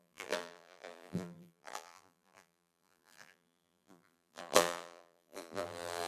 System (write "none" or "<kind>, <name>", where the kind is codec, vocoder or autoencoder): vocoder, BigVGAN v2